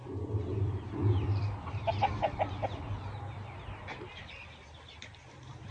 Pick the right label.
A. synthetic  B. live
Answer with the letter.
A